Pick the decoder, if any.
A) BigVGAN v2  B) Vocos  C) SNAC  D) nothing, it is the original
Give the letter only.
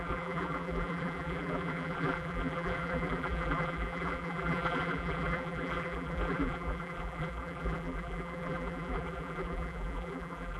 A